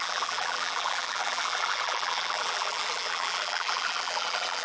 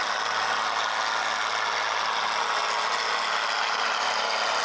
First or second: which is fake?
first